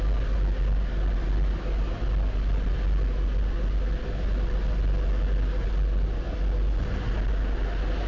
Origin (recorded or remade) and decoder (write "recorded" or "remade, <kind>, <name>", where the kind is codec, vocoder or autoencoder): recorded